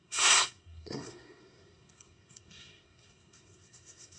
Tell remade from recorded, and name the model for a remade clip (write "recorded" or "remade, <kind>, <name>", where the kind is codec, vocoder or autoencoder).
remade, codec, SNAC